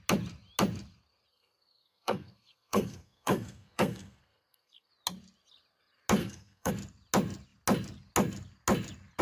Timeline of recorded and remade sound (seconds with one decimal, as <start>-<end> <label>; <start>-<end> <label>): 0.0-1.3 recorded; 1.3-4.9 remade; 4.9-6.2 recorded; 6.2-6.7 remade; 6.7-9.2 recorded